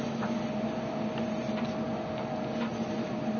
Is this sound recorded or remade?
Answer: recorded